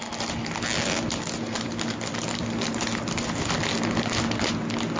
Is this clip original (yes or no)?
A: yes